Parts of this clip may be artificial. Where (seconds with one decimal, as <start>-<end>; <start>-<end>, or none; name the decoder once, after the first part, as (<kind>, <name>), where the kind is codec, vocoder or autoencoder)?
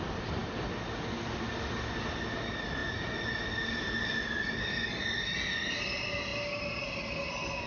none